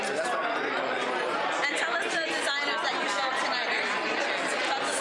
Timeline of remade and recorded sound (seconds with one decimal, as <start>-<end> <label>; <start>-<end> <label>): 0.0-5.0 recorded